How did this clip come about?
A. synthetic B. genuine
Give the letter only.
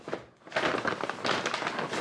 B